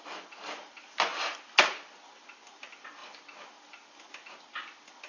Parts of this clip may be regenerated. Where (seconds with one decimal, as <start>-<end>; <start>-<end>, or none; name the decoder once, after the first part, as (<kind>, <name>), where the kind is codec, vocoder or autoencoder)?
none